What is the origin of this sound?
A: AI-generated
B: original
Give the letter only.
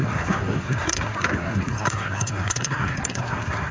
A